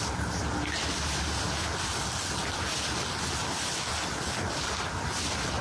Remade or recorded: recorded